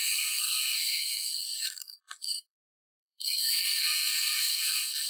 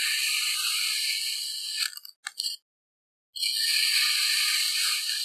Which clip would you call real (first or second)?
second